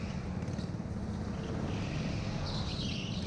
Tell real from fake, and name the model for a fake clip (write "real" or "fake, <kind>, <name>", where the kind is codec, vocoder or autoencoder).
real